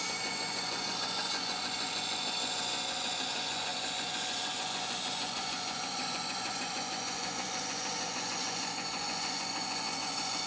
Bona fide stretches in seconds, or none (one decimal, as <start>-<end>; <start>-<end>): none